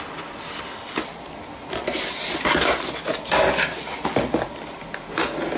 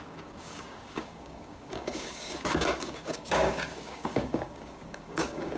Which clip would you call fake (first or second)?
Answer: second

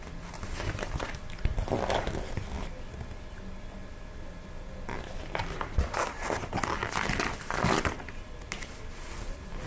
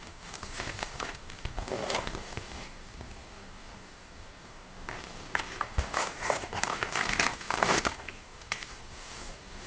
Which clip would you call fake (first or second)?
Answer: second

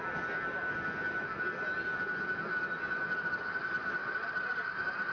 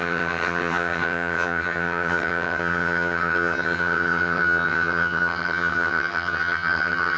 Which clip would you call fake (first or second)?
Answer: second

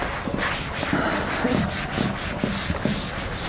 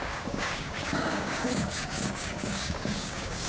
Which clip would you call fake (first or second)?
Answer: second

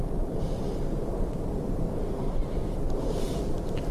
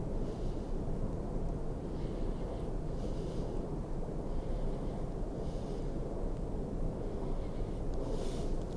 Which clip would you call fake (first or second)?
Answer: first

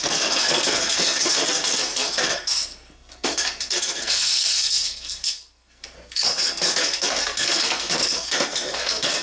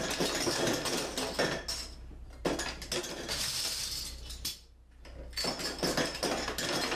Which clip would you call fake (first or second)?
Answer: first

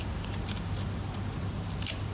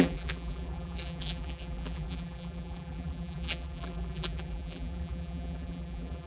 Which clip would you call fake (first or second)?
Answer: second